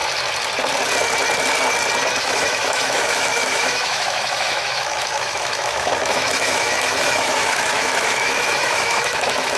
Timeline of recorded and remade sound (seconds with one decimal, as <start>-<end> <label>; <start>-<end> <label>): 0.0-2.2 recorded; 2.2-9.6 remade